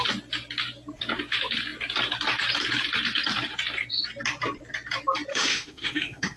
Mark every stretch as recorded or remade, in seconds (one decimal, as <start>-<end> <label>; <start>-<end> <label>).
0.0-5.3 recorded; 5.3-6.4 remade

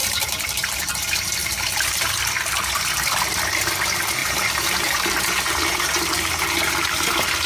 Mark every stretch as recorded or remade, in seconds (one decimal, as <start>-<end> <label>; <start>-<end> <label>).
0.0-0.9 remade; 0.9-1.4 recorded; 1.4-2.1 remade; 2.1-4.2 recorded; 4.2-6.9 remade; 6.9-7.5 recorded

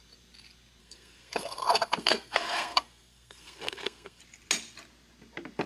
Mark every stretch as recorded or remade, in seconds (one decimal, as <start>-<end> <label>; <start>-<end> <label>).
0.0-0.8 recorded; 0.8-4.2 remade; 4.2-5.7 recorded

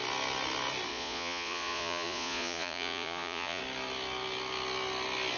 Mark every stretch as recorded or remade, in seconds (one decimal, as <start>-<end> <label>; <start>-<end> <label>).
0.0-0.9 recorded; 0.9-3.6 remade; 3.6-5.4 recorded

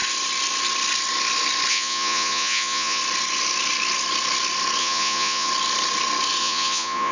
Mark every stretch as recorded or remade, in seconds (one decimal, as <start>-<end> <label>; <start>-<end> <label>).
0.0-1.7 recorded; 1.7-3.0 remade; 3.0-4.8 recorded; 4.8-5.5 remade; 5.5-6.4 recorded; 6.4-7.1 remade

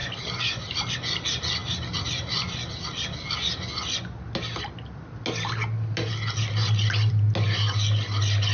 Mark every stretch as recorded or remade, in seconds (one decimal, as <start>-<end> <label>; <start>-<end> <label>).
0.0-8.5 recorded

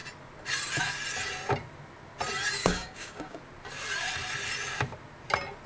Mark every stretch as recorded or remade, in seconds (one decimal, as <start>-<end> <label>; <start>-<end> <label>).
0.0-2.6 recorded; 2.6-3.4 remade; 3.4-5.7 recorded

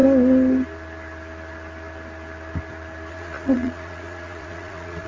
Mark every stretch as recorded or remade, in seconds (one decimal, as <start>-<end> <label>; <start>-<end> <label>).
0.0-3.1 recorded; 3.1-5.1 remade